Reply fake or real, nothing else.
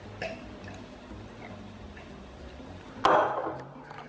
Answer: real